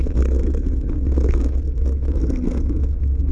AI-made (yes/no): yes